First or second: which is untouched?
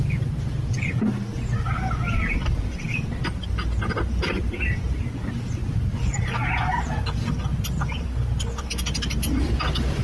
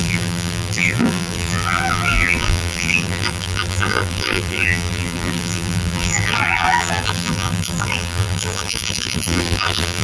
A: first